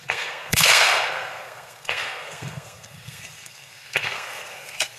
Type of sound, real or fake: fake